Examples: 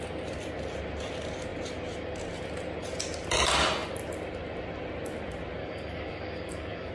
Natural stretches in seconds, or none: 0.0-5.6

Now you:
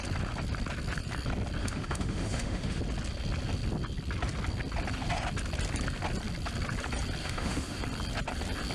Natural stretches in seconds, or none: 0.0-1.6; 2.8-7.2; 7.8-8.7

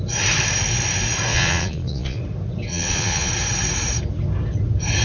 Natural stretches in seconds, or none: 0.0-1.3; 2.2-2.7; 3.3-5.0

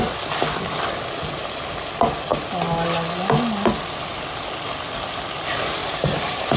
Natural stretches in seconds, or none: 0.0-5.8

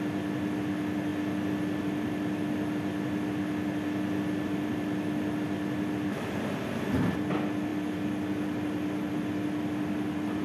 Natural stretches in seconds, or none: 0.0-10.4

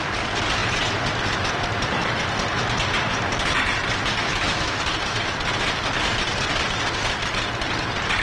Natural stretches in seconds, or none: 0.0-4.2; 4.8-8.2